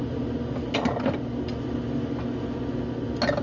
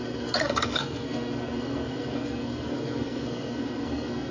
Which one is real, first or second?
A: first